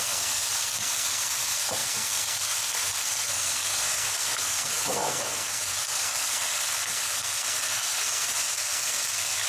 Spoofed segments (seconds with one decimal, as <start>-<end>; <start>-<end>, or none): 0.0-9.5